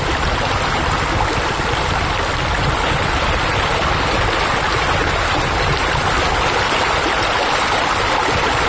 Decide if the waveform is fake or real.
real